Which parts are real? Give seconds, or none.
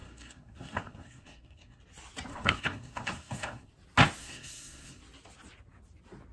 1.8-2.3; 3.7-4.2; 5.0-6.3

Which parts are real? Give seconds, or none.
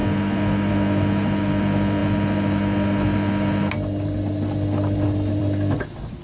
0.0-6.2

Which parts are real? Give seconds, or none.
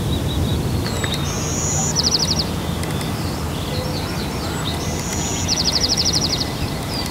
0.0-5.1; 6.4-7.1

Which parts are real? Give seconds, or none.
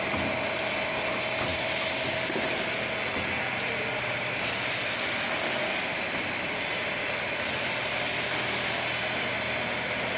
0.0-1.5; 2.9-10.2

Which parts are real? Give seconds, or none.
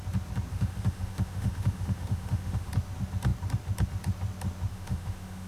0.0-0.5; 2.7-4.7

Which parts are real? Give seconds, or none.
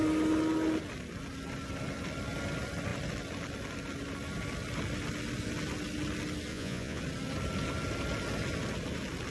0.0-6.5; 7.0-9.3